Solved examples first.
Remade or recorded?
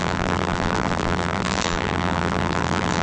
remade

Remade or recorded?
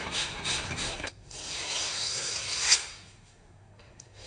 remade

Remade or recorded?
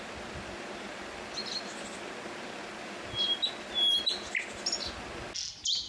recorded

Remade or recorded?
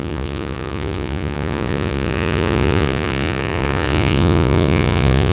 remade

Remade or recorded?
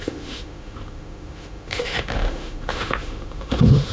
remade